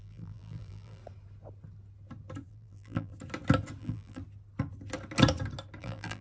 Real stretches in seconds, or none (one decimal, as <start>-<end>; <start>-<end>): 1.0-2.5; 3.1-3.8; 4.2-5.8